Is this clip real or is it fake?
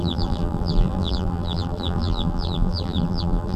fake